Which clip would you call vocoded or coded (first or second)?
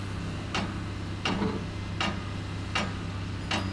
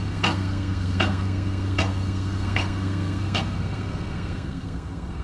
second